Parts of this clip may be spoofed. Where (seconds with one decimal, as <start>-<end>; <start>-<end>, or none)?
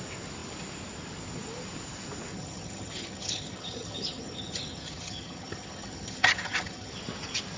2.3-6.9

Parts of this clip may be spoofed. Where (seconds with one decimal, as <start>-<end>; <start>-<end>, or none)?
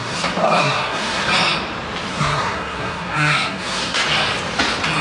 0.0-1.2; 2.1-4.0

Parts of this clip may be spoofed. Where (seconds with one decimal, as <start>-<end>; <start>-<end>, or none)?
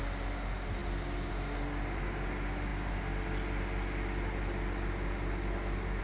none